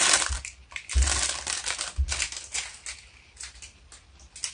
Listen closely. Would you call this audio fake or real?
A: real